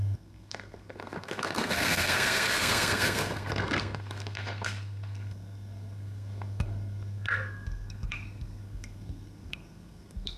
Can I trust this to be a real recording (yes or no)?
no